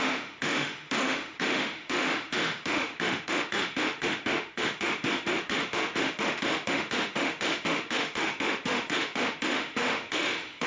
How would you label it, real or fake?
fake